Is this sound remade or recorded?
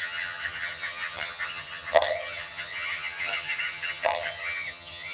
remade